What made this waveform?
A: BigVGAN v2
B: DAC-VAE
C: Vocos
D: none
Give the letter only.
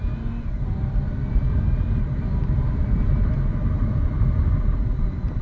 D